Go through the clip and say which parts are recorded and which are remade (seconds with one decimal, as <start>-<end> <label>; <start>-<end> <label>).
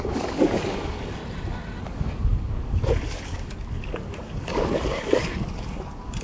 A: 0.0-1.2 remade; 1.2-1.8 recorded; 1.8-6.2 remade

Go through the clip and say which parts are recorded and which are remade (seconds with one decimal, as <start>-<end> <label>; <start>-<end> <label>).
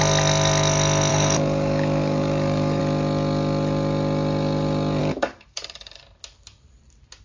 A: 0.0-1.1 recorded; 1.1-2.8 remade; 2.8-5.0 recorded; 5.0-6.0 remade; 6.0-7.2 recorded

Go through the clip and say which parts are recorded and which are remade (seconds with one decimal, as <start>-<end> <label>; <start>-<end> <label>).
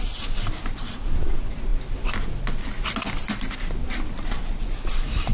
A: 0.0-5.3 recorded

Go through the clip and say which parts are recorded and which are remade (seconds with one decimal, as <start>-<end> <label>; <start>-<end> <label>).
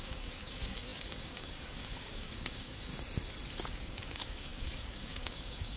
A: 0.0-2.9 remade; 2.9-3.7 recorded; 3.7-5.8 remade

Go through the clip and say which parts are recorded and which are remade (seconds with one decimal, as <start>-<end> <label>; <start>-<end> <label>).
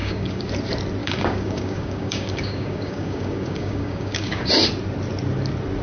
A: 0.0-0.5 remade; 0.5-1.0 recorded; 1.0-4.5 remade; 4.5-5.8 recorded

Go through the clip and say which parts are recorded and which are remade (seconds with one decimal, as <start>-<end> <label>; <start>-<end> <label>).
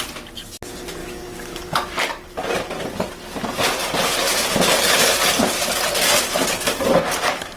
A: 0.0-1.0 recorded; 1.0-2.3 remade; 2.3-7.6 recorded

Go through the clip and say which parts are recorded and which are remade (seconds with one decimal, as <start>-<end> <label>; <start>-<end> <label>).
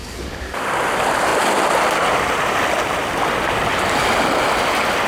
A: 0.0-0.6 remade; 0.6-5.1 recorded